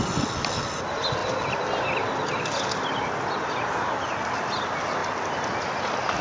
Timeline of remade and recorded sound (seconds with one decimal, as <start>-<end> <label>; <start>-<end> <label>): 0.0-6.2 recorded